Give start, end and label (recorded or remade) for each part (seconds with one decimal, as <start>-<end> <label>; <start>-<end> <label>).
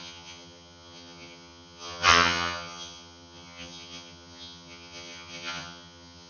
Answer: 0.0-6.3 remade